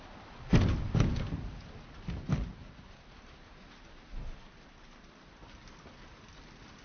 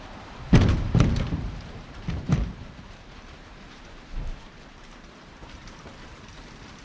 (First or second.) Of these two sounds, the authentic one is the first